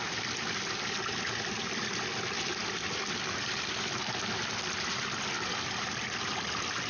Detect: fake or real real